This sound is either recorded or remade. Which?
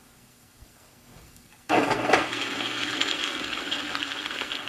remade